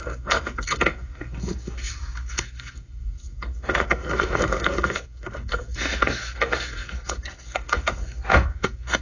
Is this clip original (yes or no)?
no